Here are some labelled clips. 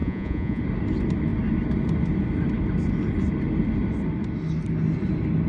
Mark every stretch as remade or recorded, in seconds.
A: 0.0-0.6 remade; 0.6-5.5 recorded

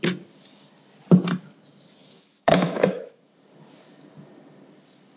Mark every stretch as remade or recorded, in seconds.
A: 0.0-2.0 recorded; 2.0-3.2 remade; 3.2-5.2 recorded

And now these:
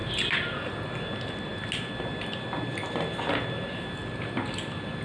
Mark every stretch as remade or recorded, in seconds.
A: 0.0-5.0 recorded